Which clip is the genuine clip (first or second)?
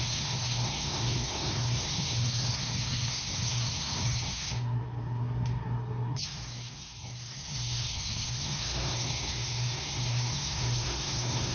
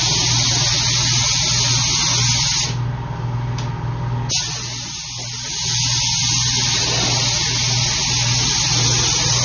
second